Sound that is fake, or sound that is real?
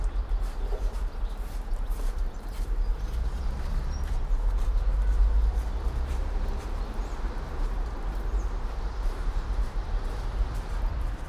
fake